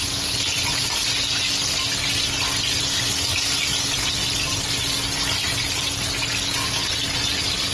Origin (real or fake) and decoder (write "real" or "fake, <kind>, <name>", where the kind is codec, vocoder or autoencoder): real